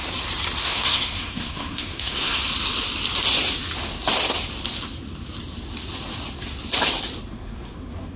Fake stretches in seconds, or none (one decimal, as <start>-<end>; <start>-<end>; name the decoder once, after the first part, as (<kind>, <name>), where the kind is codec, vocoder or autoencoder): 0.6-2.4 (codec, SNAC); 7.3-8.2